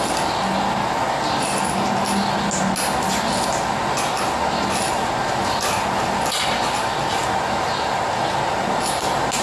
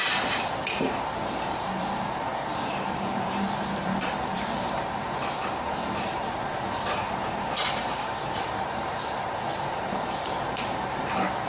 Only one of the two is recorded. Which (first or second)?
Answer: first